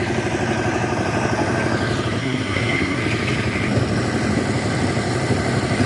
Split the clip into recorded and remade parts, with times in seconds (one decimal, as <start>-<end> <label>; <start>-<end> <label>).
0.0-2.2 recorded; 2.2-3.0 remade; 3.0-5.9 recorded